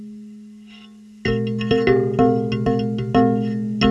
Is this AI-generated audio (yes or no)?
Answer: no